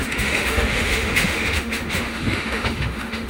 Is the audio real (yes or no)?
no